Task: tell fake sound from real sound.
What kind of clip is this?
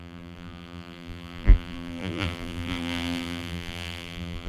fake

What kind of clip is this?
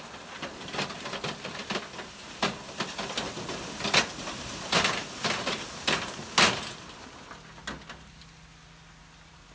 real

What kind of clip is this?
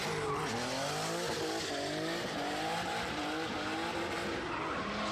real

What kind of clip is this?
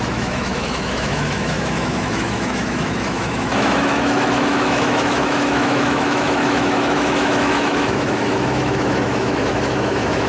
fake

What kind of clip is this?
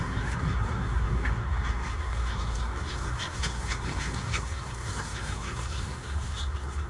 fake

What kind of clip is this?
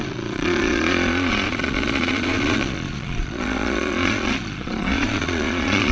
fake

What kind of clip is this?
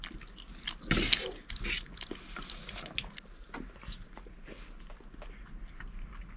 real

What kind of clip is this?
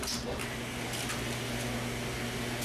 real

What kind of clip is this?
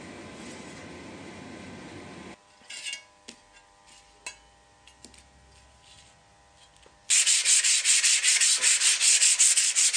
real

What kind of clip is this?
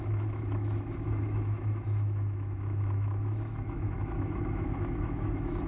fake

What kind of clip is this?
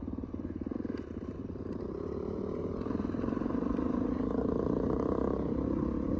fake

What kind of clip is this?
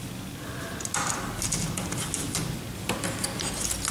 real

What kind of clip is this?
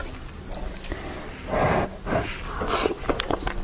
real